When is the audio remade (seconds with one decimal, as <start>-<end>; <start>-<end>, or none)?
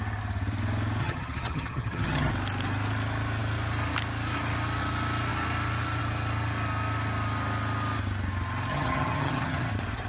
1.0-2.3; 8.7-9.7